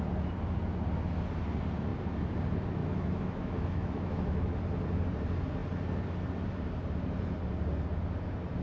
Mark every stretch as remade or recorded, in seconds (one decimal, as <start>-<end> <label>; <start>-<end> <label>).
0.0-2.8 recorded; 2.8-4.6 remade; 4.6-8.6 recorded